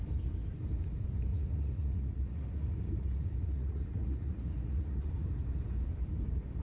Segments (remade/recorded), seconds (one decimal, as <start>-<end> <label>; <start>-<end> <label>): 0.0-1.3 recorded; 1.3-5.1 remade; 5.1-6.6 recorded